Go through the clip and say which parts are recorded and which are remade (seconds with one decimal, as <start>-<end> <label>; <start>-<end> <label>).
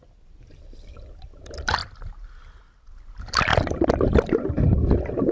0.0-3.5 remade; 3.5-4.6 recorded; 4.6-5.3 remade